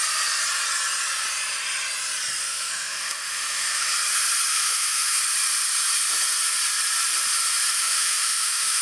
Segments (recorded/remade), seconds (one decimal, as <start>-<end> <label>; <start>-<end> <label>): 0.0-2.4 recorded; 2.4-3.9 remade; 3.9-4.5 recorded; 4.5-5.2 remade; 5.2-7.8 recorded; 7.8-8.8 remade

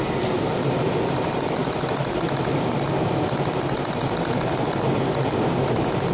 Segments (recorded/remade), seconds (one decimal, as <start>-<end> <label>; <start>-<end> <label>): 0.0-6.1 recorded

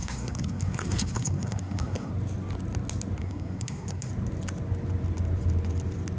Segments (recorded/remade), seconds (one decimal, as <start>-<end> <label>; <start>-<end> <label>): 0.0-2.1 remade; 2.1-3.2 recorded; 3.2-4.1 remade; 4.1-6.2 recorded

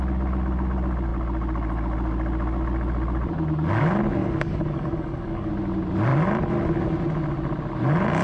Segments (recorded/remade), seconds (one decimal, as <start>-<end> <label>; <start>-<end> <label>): 0.0-4.2 recorded; 4.2-5.5 remade; 5.5-8.2 recorded

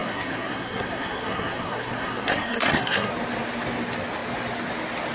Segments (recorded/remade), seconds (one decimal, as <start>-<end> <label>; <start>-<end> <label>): 0.0-3.1 remade; 3.1-5.1 recorded

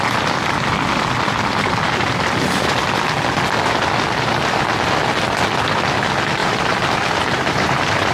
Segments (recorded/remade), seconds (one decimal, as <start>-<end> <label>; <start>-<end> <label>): 0.0-6.4 recorded; 6.4-8.1 remade

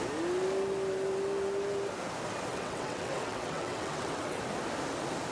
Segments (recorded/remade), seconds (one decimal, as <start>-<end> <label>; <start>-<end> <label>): 0.0-2.5 recorded; 2.5-4.4 remade; 4.4-5.3 recorded